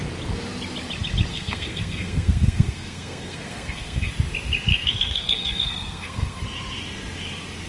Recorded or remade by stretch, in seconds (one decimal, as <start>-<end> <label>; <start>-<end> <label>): 0.0-1.3 recorded; 1.3-4.1 remade; 4.1-4.7 recorded; 4.7-6.4 remade; 6.4-7.7 recorded